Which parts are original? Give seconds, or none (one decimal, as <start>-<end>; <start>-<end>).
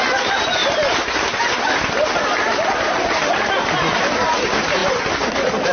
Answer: 0.0-5.7